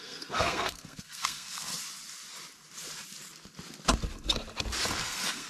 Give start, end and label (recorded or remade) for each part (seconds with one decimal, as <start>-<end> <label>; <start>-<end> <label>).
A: 0.0-1.7 remade; 1.7-5.0 recorded; 5.0-5.5 remade